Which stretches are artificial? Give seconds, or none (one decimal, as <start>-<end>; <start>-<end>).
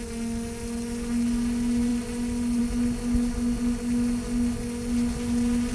none